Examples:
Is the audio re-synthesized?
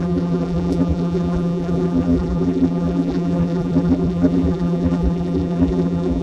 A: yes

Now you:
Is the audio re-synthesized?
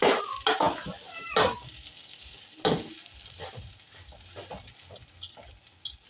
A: no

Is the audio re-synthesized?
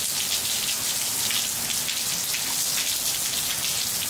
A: no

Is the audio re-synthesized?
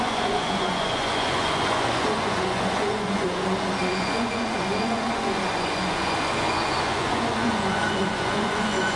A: yes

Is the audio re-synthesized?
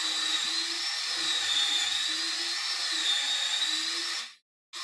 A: no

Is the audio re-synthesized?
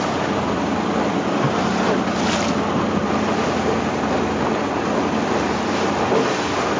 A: no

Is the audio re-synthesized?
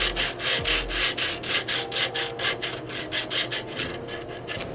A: no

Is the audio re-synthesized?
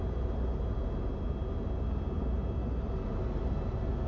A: no